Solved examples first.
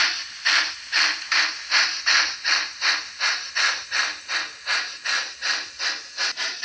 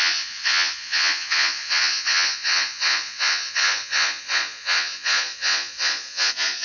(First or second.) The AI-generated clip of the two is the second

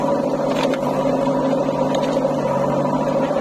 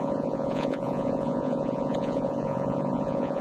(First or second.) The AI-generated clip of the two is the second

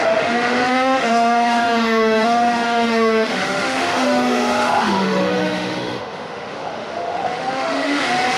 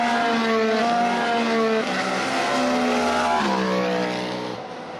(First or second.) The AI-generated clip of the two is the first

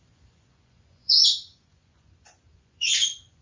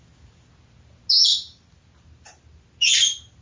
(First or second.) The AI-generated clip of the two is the first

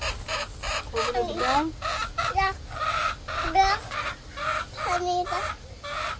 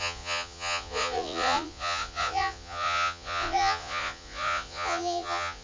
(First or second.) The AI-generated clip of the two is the second